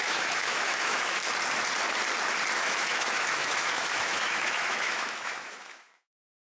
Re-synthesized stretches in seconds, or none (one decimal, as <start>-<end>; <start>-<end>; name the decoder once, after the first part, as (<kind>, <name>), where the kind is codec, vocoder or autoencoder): 0.0-1.2 (autoencoder, DAC-VAE); 2.6-6.5